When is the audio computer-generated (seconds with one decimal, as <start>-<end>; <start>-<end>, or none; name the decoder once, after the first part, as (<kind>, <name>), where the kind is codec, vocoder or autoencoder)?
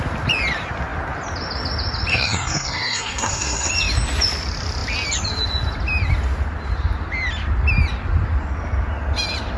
2.1-3.7 (codec, SNAC)